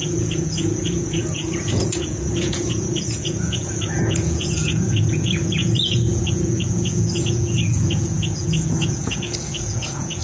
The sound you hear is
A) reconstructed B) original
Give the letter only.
A